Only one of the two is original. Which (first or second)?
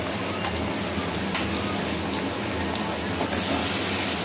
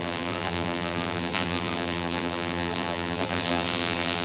first